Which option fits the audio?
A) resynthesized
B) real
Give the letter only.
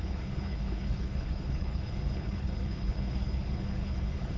A